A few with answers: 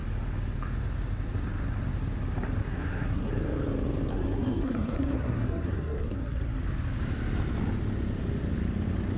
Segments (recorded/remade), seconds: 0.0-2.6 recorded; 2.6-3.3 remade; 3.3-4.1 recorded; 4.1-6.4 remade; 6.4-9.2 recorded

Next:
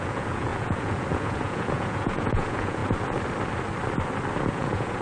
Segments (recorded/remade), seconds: 0.0-2.8 remade; 2.8-4.5 recorded; 4.5-5.0 remade

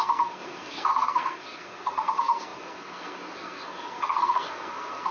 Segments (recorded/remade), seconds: 0.0-5.1 remade

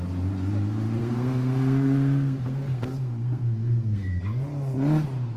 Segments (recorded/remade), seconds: 0.0-1.0 recorded; 1.0-4.2 remade; 4.2-5.4 recorded

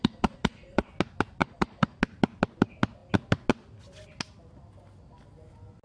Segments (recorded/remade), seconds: 0.0-0.9 remade; 0.9-1.4 recorded; 1.4-2.0 remade; 2.0-5.8 recorded

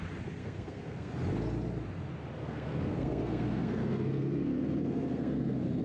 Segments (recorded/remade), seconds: 0.0-0.4 recorded; 0.4-1.1 remade; 1.1-2.4 recorded; 2.4-5.8 remade